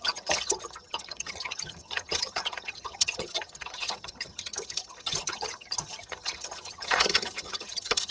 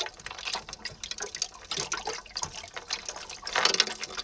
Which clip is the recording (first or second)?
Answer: second